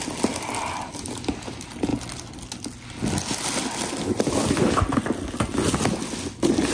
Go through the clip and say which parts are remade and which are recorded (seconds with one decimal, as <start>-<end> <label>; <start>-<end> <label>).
0.0-6.7 recorded